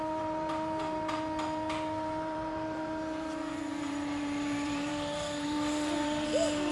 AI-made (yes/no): yes